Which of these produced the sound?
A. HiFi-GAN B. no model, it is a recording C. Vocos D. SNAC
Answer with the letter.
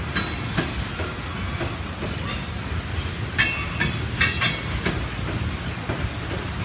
B